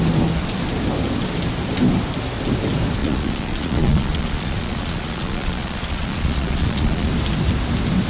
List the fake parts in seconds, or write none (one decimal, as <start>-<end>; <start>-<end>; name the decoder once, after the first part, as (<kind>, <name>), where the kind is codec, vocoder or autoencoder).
3.0-7.1 (vocoder, Vocos)